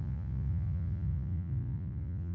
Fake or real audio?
fake